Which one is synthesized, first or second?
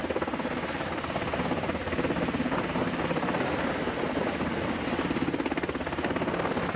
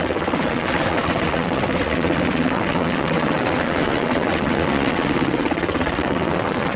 second